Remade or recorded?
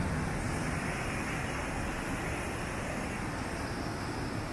recorded